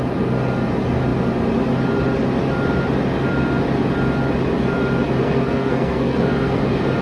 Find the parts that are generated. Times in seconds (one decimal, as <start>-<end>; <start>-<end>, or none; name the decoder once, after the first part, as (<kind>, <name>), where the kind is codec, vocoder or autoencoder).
5.2-6.6 (codec, SNAC)